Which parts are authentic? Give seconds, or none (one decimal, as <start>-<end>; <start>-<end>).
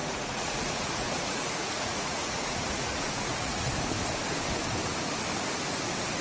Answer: 3.7-6.2